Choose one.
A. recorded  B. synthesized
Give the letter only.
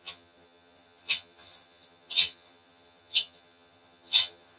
B